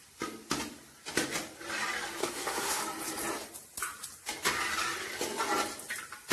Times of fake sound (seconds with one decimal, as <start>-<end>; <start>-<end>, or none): 2.2-2.8